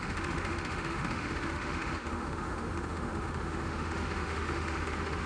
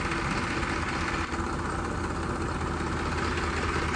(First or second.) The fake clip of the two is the first